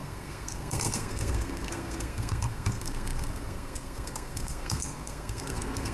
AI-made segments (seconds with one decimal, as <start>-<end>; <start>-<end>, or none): 0.0-5.9